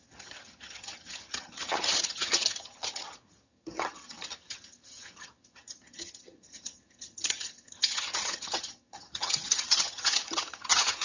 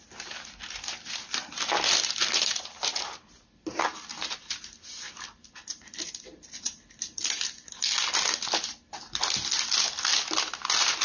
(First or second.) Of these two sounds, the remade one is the first